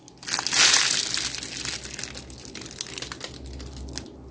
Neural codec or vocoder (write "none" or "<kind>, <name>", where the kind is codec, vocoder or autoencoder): none